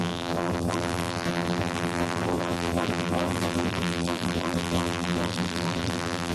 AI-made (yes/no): yes